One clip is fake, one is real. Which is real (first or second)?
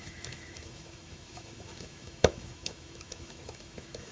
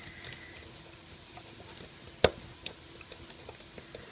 second